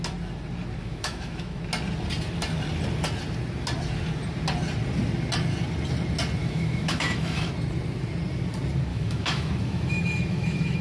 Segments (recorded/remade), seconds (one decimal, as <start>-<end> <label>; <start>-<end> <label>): 0.0-0.8 recorded; 0.8-1.6 remade; 1.6-6.4 recorded; 6.4-7.5 remade; 7.5-8.9 recorded; 8.9-10.8 remade